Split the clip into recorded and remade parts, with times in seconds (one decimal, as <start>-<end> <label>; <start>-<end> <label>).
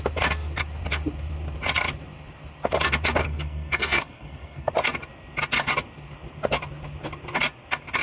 0.0-3.2 recorded; 3.2-4.7 remade; 4.7-8.0 recorded